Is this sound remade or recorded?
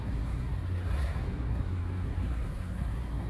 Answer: remade